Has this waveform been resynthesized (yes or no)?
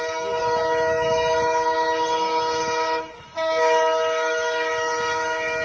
yes